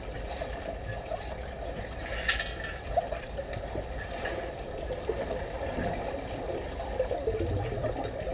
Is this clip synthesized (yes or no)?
no